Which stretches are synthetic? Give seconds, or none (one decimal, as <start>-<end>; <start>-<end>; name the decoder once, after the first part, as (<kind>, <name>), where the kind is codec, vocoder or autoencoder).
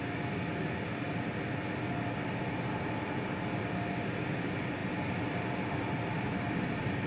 none